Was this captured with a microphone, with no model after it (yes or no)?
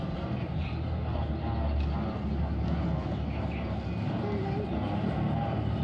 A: yes